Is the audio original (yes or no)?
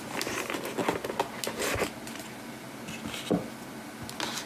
yes